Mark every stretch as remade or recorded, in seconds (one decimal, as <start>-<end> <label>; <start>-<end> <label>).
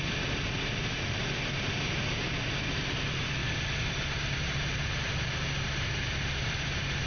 0.0-3.4 recorded; 3.4-7.1 remade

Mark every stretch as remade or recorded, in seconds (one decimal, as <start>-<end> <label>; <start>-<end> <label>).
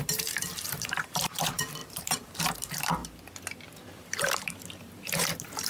0.0-3.0 remade; 3.0-3.9 recorded; 3.9-5.7 remade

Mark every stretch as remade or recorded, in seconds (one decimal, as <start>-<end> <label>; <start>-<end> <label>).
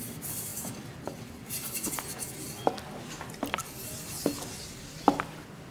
0.0-5.7 recorded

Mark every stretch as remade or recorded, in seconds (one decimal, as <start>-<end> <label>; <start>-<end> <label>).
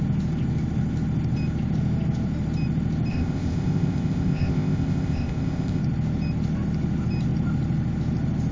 0.0-3.1 recorded; 3.1-5.8 remade; 5.8-8.5 recorded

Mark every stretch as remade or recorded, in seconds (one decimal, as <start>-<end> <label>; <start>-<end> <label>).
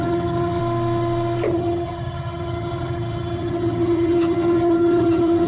0.0-0.6 remade; 0.6-1.5 recorded; 1.5-5.5 remade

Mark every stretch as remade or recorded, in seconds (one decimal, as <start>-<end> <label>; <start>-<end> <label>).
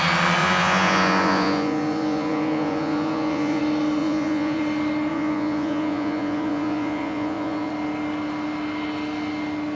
0.0-0.4 recorded; 0.4-3.6 remade; 3.6-4.0 recorded; 4.0-4.6 remade; 4.6-5.1 recorded; 5.1-7.7 remade; 7.7-9.7 recorded